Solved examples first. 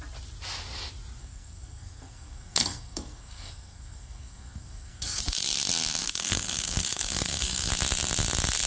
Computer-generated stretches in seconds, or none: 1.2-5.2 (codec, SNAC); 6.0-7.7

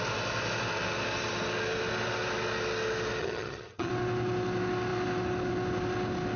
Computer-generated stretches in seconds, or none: 3.2-3.9 (vocoder, HiFi-GAN)

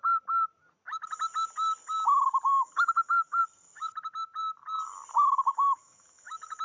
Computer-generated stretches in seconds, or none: 2.5-3.4 (autoencoder, DAC-VAE); 5.5-6.6